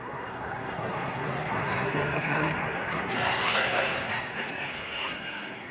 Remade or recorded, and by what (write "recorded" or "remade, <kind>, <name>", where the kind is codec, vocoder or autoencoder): remade, codec, SNAC